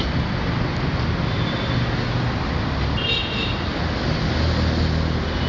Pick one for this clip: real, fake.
real